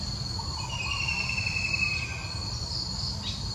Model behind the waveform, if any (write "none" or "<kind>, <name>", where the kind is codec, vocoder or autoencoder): vocoder, BigVGAN v2